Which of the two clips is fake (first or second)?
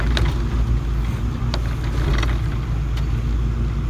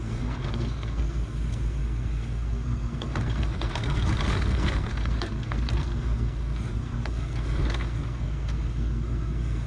second